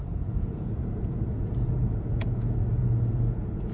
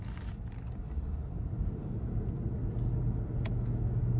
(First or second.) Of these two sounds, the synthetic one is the first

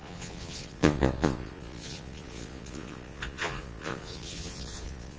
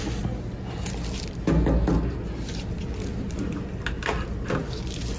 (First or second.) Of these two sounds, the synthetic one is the first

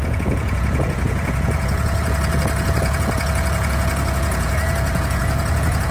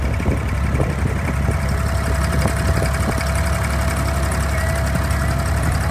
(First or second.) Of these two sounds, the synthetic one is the first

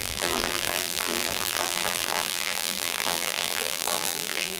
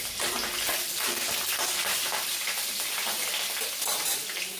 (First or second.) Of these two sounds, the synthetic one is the first